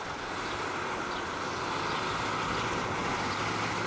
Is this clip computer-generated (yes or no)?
no